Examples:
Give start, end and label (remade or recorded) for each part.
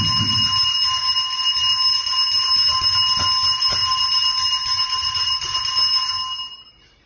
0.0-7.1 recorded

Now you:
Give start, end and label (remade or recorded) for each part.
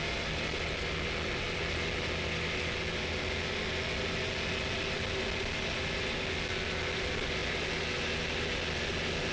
0.0-9.3 recorded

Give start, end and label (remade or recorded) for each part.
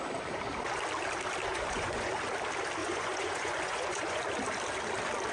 0.0-1.5 recorded; 1.5-2.1 remade; 2.1-2.8 recorded; 2.8-4.2 remade; 4.2-5.3 recorded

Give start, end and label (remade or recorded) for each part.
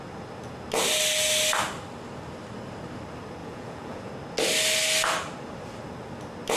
0.0-3.4 recorded; 3.4-4.1 remade; 4.1-6.6 recorded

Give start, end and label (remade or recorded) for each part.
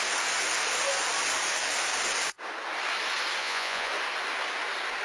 0.0-3.4 recorded; 3.4-3.9 remade; 3.9-5.0 recorded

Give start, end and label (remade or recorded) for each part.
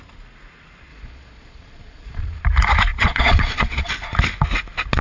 0.0-0.9 recorded; 0.9-2.4 remade; 2.4-2.9 recorded; 2.9-3.9 remade; 3.9-5.0 recorded